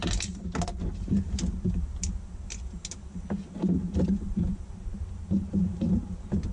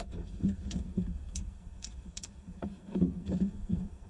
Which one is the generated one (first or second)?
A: second